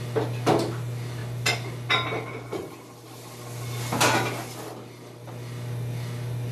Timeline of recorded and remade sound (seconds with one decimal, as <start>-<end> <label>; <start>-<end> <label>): 0.0-6.5 recorded